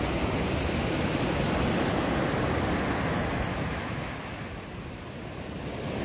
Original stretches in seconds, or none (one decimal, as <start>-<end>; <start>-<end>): 0.0-3.5; 4.1-6.0